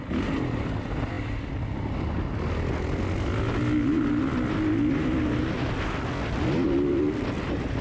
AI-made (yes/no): no